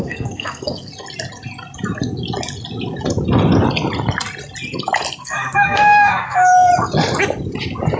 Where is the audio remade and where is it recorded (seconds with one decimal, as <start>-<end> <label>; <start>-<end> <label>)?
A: 0.0-0.9 remade; 0.9-5.2 recorded; 5.2-6.7 remade; 6.7-8.0 recorded